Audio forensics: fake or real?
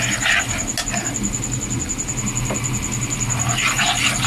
real